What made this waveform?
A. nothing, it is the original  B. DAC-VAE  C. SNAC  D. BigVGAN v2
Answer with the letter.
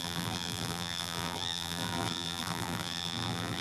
D